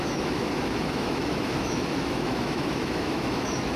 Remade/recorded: remade